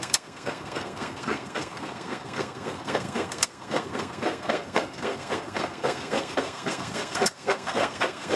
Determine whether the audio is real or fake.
fake